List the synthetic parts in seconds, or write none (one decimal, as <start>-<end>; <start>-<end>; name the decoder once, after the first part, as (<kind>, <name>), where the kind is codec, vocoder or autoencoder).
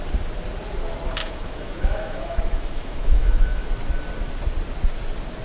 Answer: 1.2-3.7 (autoencoder, DAC-VAE)